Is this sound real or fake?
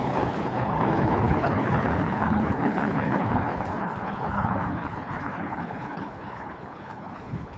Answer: fake